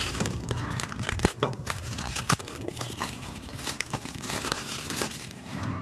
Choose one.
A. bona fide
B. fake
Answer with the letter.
B